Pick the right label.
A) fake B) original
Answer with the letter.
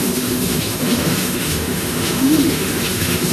A